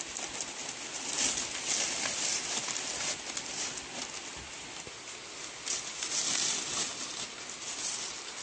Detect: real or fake real